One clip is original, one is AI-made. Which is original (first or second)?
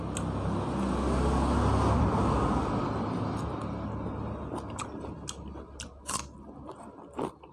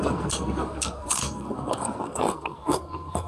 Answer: first